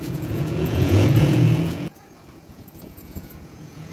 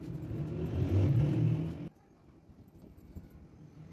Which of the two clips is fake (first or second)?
first